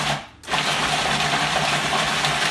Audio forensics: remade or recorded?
recorded